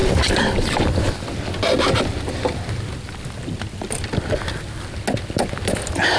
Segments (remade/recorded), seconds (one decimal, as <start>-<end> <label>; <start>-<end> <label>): 0.0-0.8 remade; 0.8-6.2 recorded